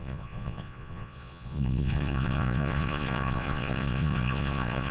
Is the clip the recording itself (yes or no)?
no